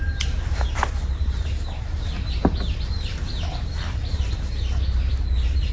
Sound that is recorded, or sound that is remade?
remade